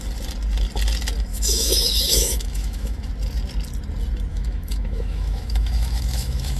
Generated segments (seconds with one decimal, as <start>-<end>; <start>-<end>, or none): 1.3-3.1; 4.3-6.6